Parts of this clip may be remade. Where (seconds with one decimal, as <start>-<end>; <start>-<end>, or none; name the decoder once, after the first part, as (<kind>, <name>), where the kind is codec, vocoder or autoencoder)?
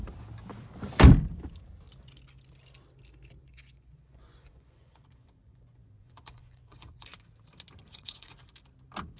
3.4-7.1 (vocoder, Vocos); 7.9-8.4